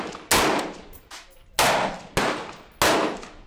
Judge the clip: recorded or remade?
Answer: recorded